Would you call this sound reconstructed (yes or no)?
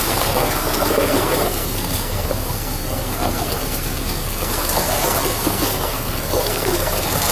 yes